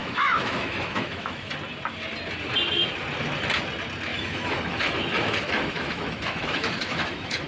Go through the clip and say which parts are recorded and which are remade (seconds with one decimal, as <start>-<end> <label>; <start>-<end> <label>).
0.0-1.5 remade; 1.5-4.1 recorded; 4.1-7.5 remade